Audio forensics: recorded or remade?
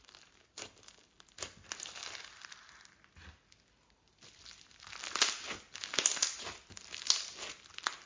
recorded